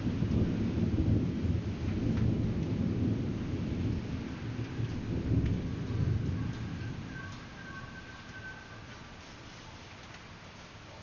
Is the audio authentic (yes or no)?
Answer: yes